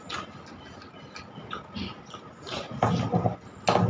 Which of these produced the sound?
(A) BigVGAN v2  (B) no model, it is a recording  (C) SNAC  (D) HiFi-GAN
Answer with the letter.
B